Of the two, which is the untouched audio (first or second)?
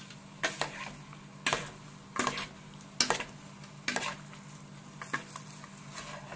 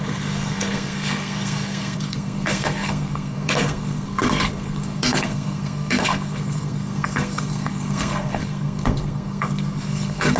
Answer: first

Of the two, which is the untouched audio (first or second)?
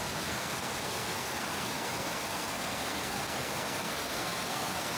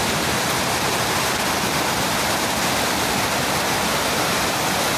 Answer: second